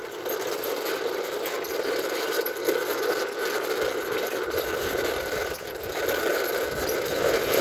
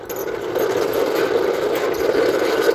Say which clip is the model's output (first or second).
first